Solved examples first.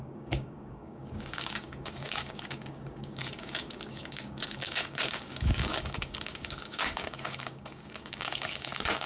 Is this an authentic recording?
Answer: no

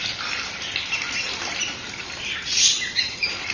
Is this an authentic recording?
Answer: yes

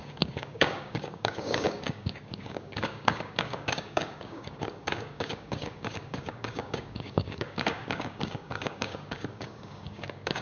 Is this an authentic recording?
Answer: no